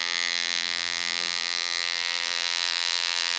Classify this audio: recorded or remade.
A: remade